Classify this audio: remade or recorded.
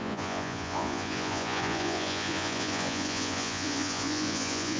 remade